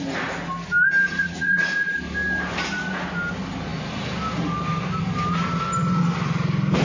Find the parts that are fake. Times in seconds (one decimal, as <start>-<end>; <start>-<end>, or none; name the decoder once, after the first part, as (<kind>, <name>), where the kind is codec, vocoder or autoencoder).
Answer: 1.1-1.9 (vocoder, Vocos)